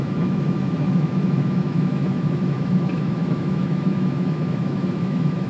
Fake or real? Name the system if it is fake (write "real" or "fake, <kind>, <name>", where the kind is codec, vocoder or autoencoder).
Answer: fake, autoencoder, DAC-VAE